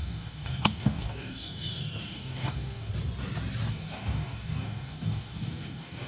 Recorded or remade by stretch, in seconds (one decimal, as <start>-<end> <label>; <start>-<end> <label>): 0.0-2.9 remade; 2.9-3.7 recorded; 3.7-6.1 remade